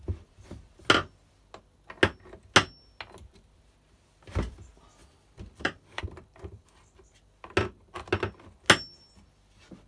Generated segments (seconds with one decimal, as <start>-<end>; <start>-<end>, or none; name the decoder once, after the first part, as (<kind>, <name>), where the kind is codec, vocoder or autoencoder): 5.0-6.0 (vocoder, BigVGAN v2)